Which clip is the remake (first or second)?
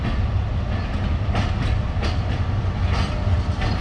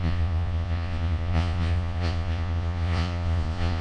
second